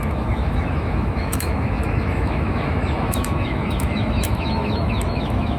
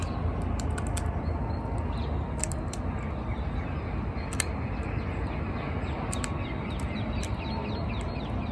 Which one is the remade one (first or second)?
first